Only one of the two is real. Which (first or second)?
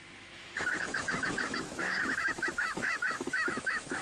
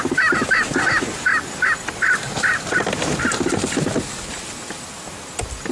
second